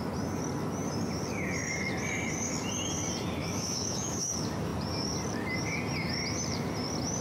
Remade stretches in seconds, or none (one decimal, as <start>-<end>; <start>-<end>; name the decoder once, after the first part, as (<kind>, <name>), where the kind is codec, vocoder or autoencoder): 3.4-4.3 (autoencoder, DAC-VAE)